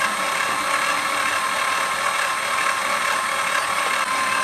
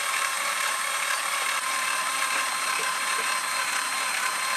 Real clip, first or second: first